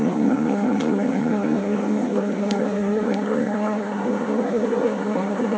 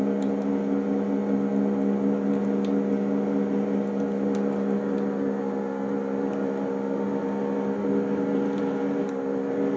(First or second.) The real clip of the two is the second